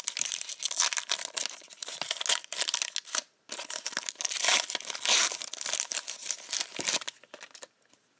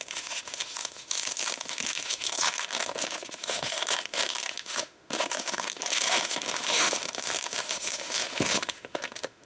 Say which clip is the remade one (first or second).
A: second